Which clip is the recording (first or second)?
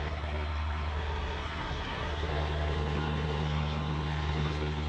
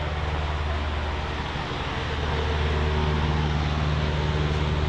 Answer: second